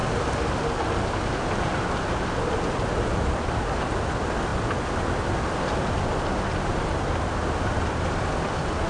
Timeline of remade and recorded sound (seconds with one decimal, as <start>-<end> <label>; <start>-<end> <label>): 0.0-8.9 recorded